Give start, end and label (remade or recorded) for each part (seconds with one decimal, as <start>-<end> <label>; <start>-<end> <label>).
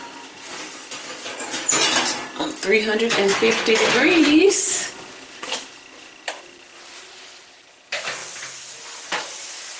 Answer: 0.0-3.3 recorded; 3.3-7.1 remade; 7.1-9.8 recorded